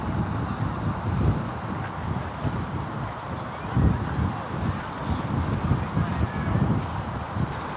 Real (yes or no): yes